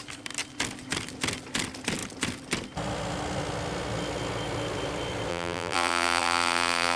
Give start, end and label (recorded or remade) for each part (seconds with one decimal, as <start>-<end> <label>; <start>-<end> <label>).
0.0-5.3 recorded; 5.3-7.0 remade